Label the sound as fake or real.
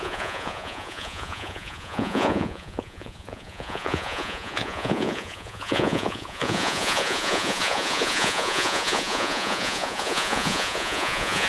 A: fake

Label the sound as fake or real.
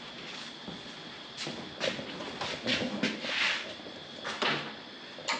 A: real